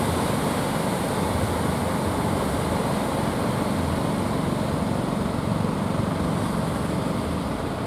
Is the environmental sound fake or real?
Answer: real